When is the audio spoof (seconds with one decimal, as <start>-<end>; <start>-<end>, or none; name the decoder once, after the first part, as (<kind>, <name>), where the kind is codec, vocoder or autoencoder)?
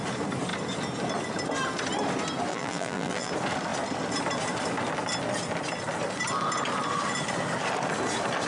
2.5-3.3 (vocoder, BigVGAN v2)